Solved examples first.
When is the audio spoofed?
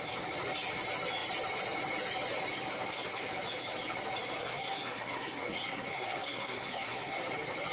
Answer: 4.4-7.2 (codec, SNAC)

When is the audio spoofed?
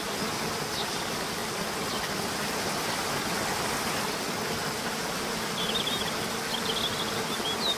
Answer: 0.0-1.4 (vocoder, BigVGAN v2); 4.8-7.8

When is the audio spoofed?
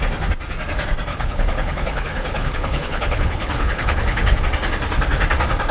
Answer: 1.1-4.4 (codec, HILCodec)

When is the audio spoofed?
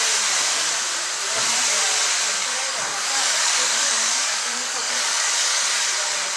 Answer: 2.4-5.8 (codec, DAC)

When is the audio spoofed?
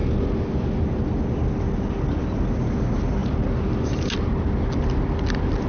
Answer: none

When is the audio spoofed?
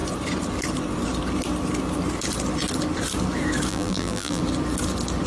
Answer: 3.7-4.4 (vocoder, BigVGAN v2)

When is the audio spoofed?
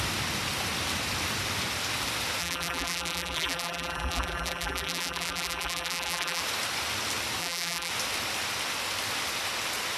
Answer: 2.4-6.4 (vocoder, BigVGAN v2); 7.4-7.9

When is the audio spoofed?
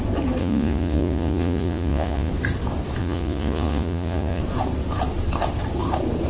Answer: 0.4-2.3 (vocoder, Vocos); 3.0-4.4